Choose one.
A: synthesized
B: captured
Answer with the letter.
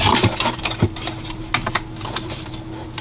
B